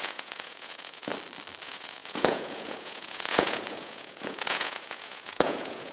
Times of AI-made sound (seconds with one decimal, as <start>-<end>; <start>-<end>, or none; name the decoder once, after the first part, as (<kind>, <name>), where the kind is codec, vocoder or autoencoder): 0.0-1.1 (vocoder, Vocos); 1.6-5.9